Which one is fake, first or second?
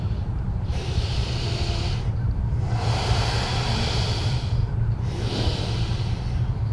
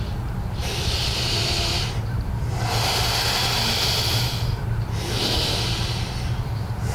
first